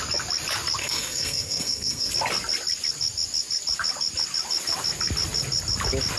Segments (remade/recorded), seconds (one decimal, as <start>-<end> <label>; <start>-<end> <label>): 0.0-0.8 recorded; 0.8-2.1 remade; 2.1-6.2 recorded